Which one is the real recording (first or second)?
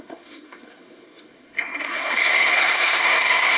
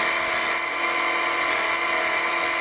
second